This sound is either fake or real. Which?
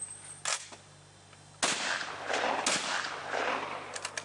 real